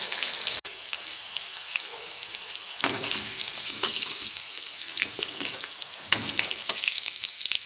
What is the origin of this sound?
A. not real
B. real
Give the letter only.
A